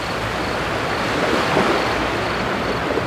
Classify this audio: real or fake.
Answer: real